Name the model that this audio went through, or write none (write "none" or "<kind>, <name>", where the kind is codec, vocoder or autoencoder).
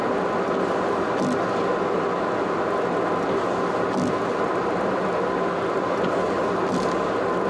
none